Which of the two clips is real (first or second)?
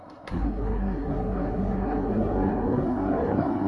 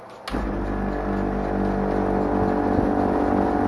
second